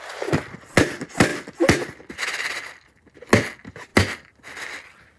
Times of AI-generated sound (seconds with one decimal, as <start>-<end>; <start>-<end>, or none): none